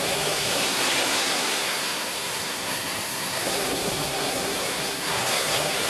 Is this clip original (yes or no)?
no